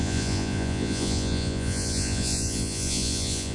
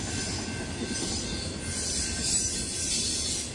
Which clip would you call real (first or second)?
second